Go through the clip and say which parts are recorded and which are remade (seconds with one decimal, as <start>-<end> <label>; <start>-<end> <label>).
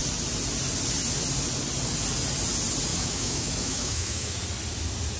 0.0-2.9 recorded; 2.9-4.4 remade; 4.4-5.2 recorded